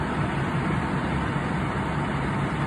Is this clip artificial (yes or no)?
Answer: no